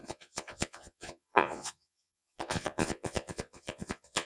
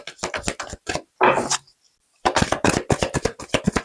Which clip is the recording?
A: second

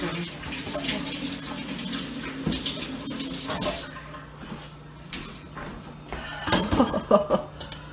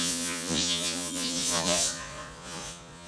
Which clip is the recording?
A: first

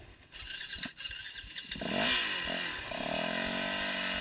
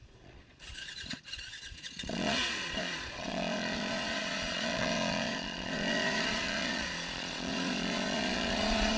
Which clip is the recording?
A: first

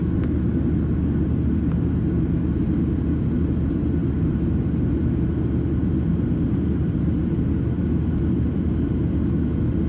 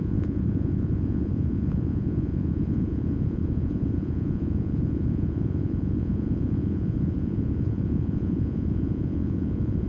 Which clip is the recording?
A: first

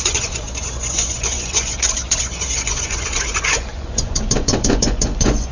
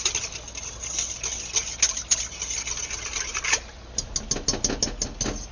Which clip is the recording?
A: second